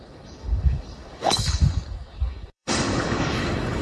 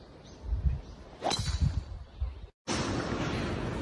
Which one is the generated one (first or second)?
first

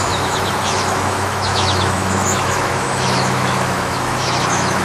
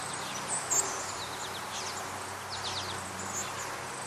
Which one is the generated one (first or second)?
first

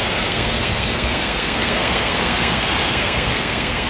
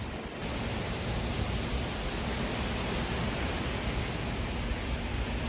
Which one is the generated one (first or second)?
first